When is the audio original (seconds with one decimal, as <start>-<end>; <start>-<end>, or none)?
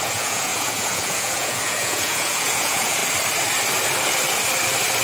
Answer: 3.0-5.0